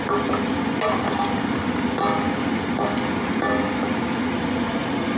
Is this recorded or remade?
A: recorded